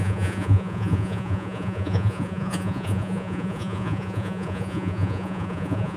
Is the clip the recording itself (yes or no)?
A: no